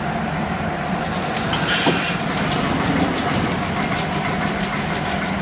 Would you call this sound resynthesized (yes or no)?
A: no